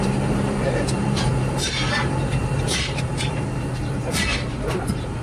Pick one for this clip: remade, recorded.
remade